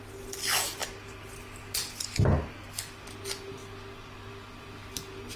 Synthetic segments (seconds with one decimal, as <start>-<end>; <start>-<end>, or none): none